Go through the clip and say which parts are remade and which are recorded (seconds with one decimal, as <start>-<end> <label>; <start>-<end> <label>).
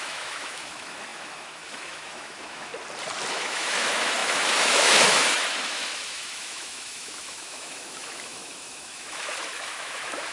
0.0-2.7 remade; 2.7-3.3 recorded; 3.3-10.3 remade